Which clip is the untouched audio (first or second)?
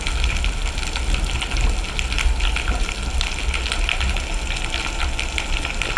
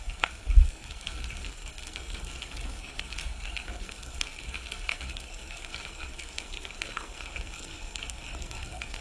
first